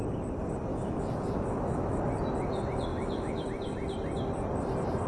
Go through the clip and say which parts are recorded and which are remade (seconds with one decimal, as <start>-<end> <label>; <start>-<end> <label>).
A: 0.0-0.7 recorded; 0.7-2.0 remade; 2.0-2.9 recorded; 2.9-3.5 remade; 3.5-5.1 recorded